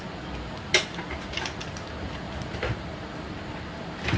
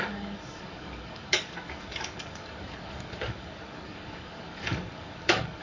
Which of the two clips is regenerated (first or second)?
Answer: second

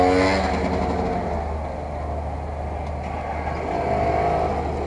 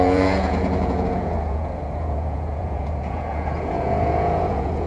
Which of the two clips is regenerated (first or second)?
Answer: second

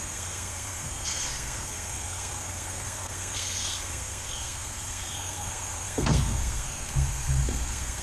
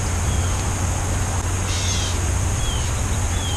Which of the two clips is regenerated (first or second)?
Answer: first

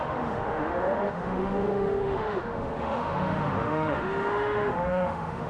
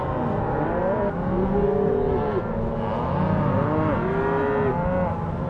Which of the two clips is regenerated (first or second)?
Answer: first